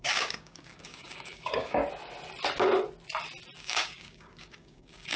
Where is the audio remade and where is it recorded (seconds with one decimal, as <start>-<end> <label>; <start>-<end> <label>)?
0.0-1.8 remade; 1.8-3.6 recorded; 3.6-5.2 remade